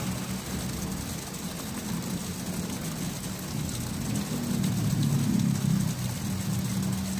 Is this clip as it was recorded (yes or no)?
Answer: yes